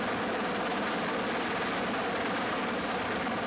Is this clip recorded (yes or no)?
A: yes